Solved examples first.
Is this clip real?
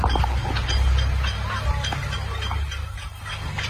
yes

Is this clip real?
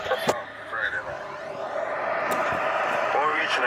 no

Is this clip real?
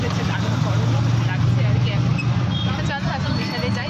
yes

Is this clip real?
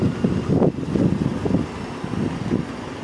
yes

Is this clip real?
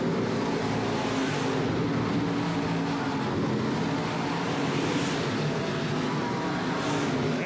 yes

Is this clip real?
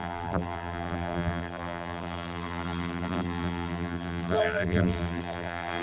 no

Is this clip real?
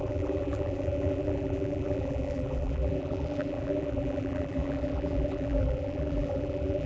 no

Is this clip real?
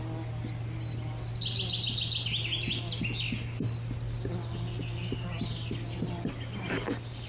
yes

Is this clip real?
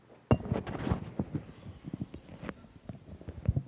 yes